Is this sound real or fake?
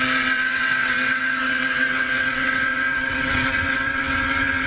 fake